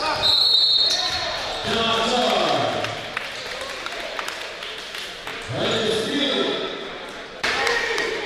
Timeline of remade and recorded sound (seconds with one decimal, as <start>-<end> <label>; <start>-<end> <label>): 0.0-1.6 remade; 1.6-3.1 recorded; 3.1-5.3 remade; 5.3-6.9 recorded; 6.9-8.3 remade